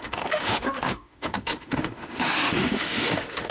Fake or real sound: fake